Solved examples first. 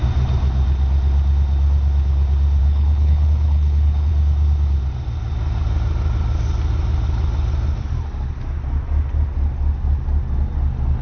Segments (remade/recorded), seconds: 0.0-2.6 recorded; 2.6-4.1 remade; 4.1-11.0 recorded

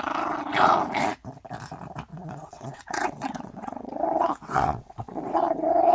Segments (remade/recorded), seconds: 0.0-2.1 recorded; 2.1-5.9 remade

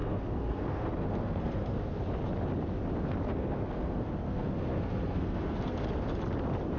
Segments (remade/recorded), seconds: 0.0-2.0 remade; 2.0-3.3 recorded; 3.3-5.8 remade; 5.8-6.8 recorded

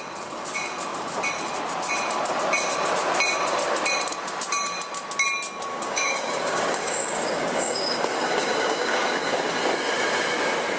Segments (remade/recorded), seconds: 0.0-5.7 recorded; 5.7-9.6 remade; 9.6-10.8 recorded

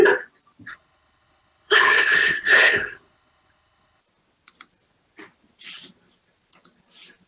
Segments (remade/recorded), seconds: 0.0-0.7 recorded; 0.7-4.0 remade; 4.0-7.3 recorded

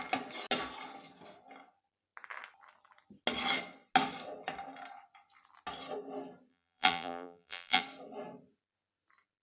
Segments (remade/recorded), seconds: 0.0-6.5 recorded; 6.5-7.8 remade; 7.8-9.4 recorded

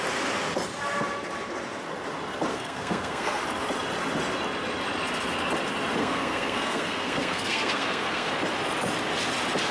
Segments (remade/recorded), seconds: 0.0-2.5 recorded; 2.5-3.4 remade; 3.4-6.0 recorded; 6.0-8.3 remade; 8.3-9.7 recorded